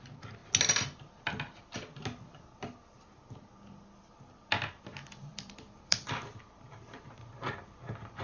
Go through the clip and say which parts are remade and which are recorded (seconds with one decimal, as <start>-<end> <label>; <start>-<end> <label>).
0.0-5.3 recorded; 5.3-8.2 remade